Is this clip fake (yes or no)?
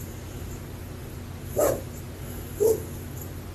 no